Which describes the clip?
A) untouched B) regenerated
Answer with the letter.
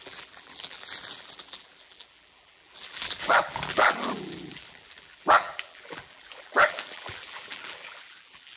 B